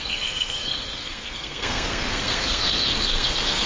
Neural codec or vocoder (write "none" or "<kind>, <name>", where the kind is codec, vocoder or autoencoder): codec, SNAC